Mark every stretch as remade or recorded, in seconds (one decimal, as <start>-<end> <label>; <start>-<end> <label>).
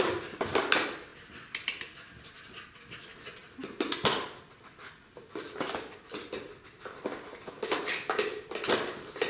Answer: 0.0-9.3 recorded